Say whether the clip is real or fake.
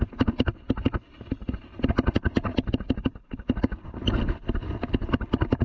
real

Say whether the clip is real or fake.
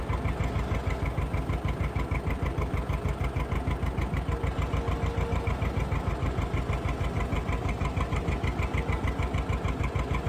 real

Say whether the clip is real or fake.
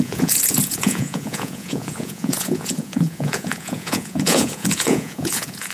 fake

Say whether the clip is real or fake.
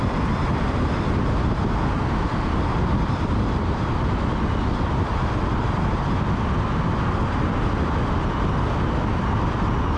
real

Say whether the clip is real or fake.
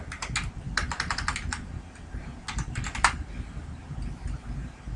real